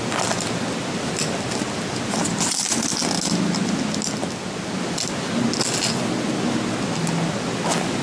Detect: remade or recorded recorded